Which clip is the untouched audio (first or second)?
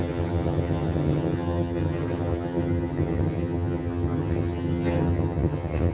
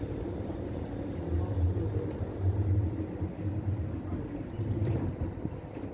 second